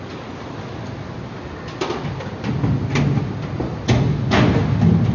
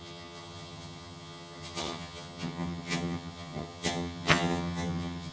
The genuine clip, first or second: first